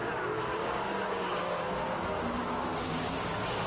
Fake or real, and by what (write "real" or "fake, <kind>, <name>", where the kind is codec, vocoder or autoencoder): fake, codec, DAC